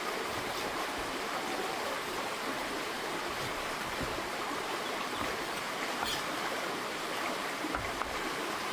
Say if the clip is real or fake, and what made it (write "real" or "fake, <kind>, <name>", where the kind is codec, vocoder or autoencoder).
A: fake, vocoder, BigVGAN v2